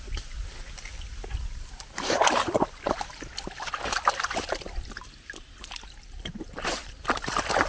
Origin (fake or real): real